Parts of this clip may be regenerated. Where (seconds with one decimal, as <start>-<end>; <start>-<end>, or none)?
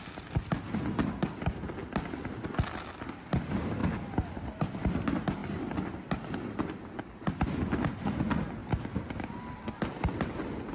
none